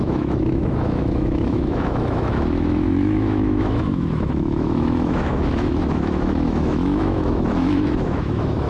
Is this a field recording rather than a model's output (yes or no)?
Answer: no